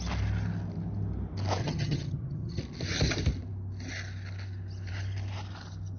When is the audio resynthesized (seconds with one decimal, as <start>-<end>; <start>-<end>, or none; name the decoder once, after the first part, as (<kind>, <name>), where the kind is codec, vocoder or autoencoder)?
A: 1.6-2.6 (vocoder, HiFi-GAN)